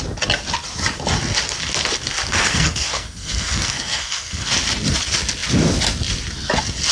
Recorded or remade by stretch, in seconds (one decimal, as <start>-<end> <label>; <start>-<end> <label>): 0.0-2.3 recorded; 2.3-4.5 remade; 4.5-6.9 recorded